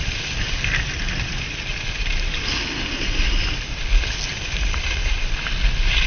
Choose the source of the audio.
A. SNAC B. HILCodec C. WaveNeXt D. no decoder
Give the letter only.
D